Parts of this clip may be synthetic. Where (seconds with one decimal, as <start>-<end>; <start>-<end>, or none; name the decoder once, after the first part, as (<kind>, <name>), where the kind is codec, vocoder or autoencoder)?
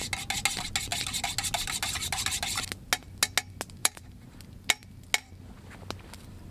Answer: 3.8-4.4 (vocoder, BigVGAN v2)